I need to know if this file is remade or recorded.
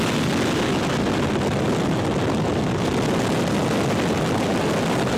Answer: recorded